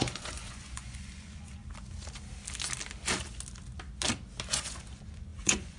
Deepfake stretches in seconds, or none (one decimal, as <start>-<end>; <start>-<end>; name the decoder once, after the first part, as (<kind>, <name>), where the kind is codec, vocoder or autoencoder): 0.0-1.6 (vocoder, Vocos); 4.5-5.8

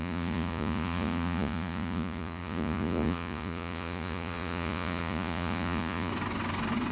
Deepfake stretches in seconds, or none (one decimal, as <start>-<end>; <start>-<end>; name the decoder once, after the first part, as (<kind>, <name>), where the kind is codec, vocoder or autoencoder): 0.0-6.1 (vocoder, Vocos)